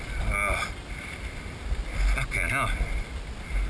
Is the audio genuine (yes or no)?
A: yes